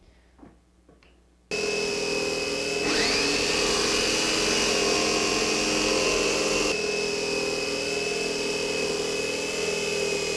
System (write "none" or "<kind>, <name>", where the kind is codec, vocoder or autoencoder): none